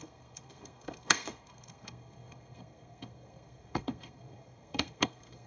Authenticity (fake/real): fake